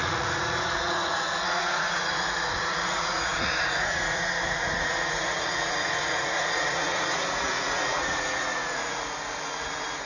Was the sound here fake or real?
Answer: fake